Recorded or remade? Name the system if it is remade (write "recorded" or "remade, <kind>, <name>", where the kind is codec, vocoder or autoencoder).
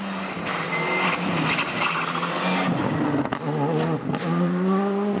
recorded